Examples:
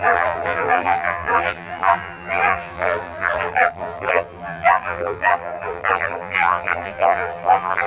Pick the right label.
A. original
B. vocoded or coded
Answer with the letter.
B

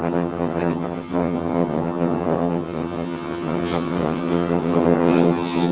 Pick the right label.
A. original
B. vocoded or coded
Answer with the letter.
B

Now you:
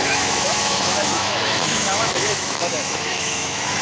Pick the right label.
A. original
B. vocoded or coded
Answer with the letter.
B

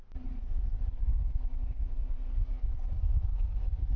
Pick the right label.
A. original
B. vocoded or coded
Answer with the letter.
A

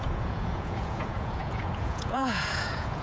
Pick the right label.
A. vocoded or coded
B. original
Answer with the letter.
A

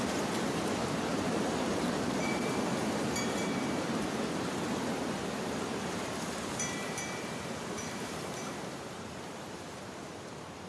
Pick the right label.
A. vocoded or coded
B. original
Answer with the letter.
A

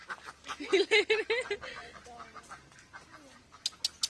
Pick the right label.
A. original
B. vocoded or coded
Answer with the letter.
A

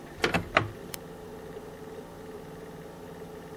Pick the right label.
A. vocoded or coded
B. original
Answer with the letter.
B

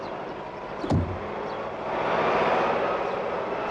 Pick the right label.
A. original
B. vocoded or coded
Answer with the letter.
A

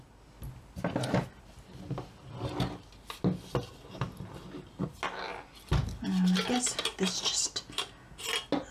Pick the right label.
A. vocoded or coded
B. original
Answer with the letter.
B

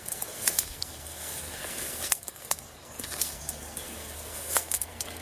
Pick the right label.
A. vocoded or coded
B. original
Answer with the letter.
A